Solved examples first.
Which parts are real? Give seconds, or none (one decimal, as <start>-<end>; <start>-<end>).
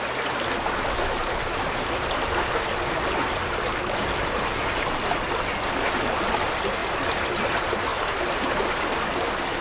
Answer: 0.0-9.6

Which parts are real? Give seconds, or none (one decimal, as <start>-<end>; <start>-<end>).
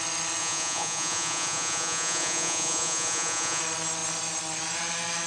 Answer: 0.0-0.4; 3.6-5.3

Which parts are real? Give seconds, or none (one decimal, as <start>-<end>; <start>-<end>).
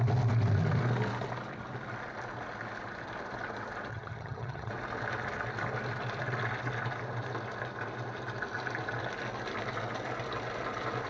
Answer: 0.0-3.9; 4.7-11.1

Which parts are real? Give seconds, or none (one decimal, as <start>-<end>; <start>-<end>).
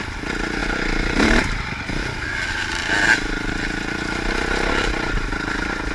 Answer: 0.0-5.9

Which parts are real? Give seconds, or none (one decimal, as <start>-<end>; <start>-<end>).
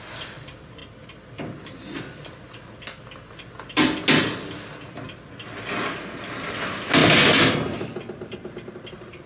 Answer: 0.0-9.3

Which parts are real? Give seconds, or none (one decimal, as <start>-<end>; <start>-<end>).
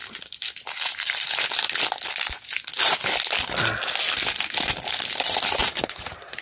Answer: 1.3-5.6